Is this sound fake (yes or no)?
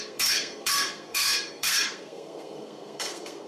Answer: yes